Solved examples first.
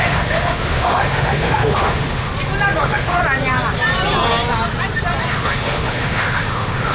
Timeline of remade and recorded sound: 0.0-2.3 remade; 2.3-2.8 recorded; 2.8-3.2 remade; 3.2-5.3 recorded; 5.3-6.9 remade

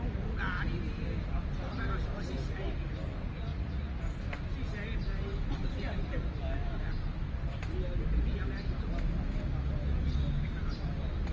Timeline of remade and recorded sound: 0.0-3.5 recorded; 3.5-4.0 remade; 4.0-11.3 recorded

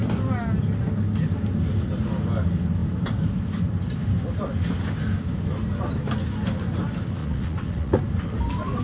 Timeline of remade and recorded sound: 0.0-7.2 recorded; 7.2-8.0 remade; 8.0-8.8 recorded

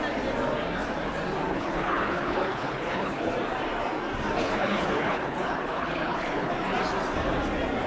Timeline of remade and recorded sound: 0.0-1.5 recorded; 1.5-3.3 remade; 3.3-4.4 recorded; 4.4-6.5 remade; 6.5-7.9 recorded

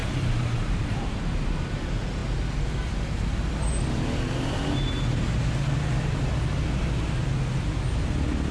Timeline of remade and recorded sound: 0.0-1.3 remade; 1.3-8.5 recorded